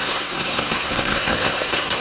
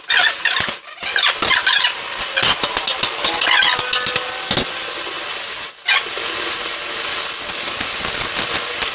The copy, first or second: first